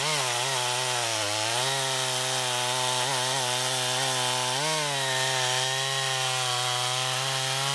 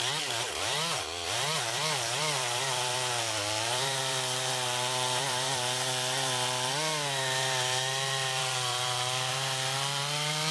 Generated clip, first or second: second